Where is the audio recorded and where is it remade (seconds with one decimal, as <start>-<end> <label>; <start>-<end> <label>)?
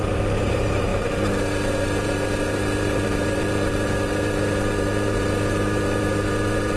0.0-0.9 remade; 0.9-1.8 recorded; 1.8-6.8 remade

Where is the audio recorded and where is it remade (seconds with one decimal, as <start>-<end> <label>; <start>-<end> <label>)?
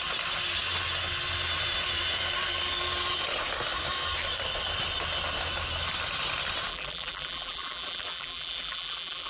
0.0-6.7 recorded; 6.7-9.3 remade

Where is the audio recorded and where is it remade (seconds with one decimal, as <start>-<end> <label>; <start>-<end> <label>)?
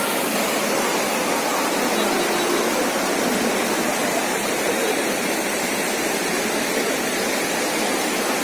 0.0-4.2 recorded; 4.2-5.4 remade; 5.4-8.4 recorded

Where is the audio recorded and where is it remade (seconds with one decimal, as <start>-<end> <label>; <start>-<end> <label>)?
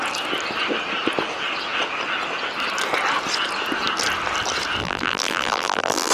0.0-4.8 recorded; 4.8-6.1 remade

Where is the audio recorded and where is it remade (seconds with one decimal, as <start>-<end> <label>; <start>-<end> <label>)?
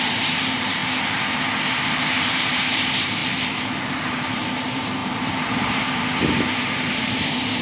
0.0-0.8 remade; 0.8-2.2 recorded; 2.2-3.2 remade; 3.2-3.9 recorded; 3.9-7.6 remade